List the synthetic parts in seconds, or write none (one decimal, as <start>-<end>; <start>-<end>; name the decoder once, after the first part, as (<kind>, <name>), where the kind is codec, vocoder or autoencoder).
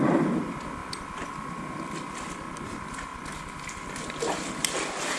0.0-3.1 (vocoder, BigVGAN v2)